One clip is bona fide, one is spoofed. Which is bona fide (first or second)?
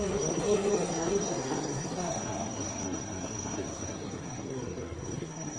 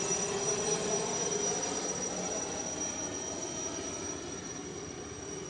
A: second